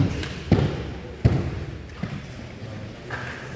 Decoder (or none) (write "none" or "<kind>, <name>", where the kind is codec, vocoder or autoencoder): none